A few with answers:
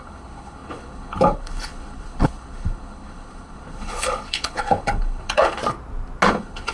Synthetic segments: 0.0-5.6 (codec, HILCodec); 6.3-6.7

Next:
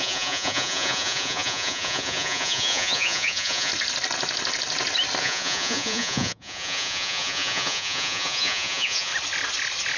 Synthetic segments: 0.0-3.7 (vocoder, Vocos); 5.2-9.1